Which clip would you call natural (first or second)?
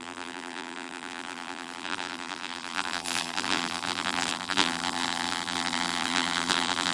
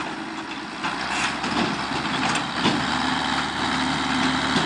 second